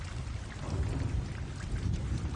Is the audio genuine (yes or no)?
yes